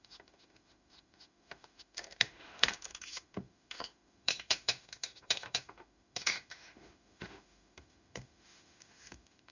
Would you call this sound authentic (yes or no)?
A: no